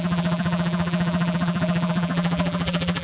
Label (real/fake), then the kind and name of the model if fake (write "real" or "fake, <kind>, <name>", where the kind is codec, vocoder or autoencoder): fake, vocoder, BigVGAN v2